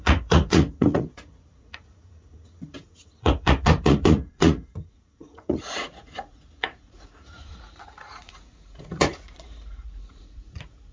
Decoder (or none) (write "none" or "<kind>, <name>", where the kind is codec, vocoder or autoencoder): vocoder, Vocos